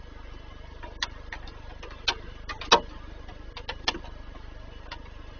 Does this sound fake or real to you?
real